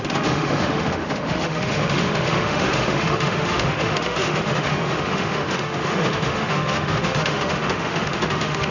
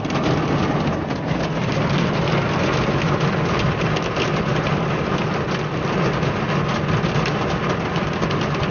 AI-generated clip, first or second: first